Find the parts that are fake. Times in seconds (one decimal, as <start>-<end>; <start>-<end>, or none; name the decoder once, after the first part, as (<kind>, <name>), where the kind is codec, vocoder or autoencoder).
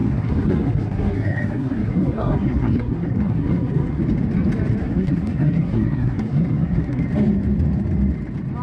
0.0-4.0 (codec, SNAC); 4.8-7.0